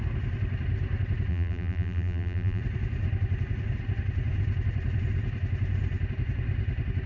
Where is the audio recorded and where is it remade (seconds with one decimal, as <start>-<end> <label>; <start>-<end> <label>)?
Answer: 0.0-1.3 recorded; 1.3-2.6 remade; 2.6-7.1 recorded